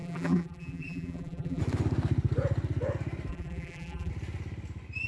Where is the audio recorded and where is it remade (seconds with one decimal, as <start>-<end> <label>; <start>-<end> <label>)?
0.0-1.6 remade; 1.6-3.3 recorded; 3.3-4.1 remade; 4.1-5.1 recorded